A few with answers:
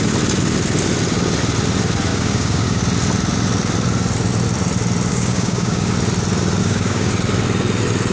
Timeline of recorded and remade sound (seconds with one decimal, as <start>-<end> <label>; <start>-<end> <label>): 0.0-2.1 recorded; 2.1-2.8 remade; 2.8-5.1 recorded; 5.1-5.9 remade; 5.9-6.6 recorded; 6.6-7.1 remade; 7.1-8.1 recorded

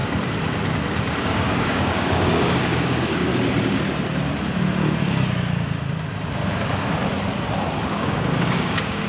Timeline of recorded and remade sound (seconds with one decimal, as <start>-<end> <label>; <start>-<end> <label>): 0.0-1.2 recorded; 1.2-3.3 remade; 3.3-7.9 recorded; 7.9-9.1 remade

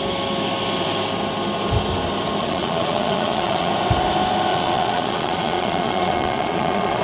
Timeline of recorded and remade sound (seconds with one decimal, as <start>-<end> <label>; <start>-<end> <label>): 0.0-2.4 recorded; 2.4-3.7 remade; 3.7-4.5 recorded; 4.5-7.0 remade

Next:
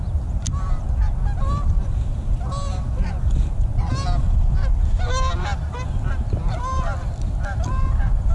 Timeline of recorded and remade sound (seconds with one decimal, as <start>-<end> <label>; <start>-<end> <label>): 0.0-8.3 recorded

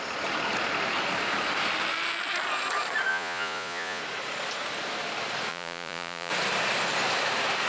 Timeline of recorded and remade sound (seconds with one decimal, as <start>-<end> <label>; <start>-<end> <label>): 0.0-3.1 recorded; 3.1-4.0 remade; 4.0-5.5 recorded; 5.5-6.3 remade; 6.3-7.7 recorded